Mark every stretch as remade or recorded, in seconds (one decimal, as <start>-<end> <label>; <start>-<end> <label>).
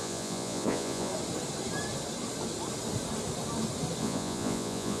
0.0-1.1 remade; 1.1-4.0 recorded; 4.0-5.0 remade